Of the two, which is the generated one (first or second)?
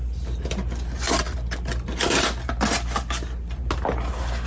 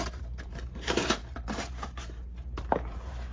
second